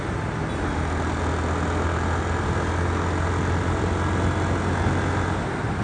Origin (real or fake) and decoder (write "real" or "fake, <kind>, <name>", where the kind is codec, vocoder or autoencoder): real